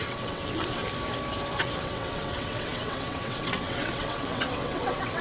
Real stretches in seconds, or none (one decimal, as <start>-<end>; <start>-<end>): 0.8-1.6